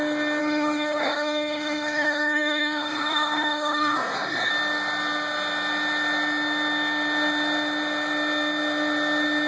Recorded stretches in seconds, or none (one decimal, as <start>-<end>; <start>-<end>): 0.0-0.4; 4.5-9.5